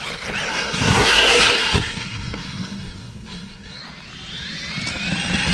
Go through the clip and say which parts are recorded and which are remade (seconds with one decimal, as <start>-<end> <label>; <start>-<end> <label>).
0.0-0.5 recorded; 0.5-3.8 remade; 3.8-5.5 recorded